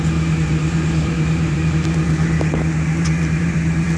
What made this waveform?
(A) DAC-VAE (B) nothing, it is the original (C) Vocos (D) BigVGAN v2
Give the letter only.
D